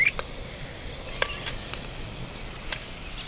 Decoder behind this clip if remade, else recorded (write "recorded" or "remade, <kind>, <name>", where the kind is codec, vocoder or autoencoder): recorded